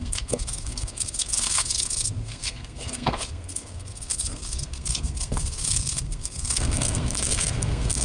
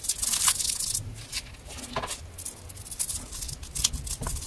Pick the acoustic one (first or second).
second